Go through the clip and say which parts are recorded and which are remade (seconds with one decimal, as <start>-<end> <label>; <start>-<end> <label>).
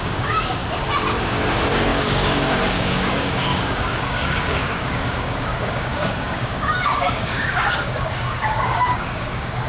0.0-0.6 remade; 0.6-1.2 recorded; 1.2-9.7 remade